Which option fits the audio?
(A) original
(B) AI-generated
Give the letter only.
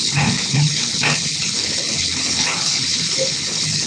B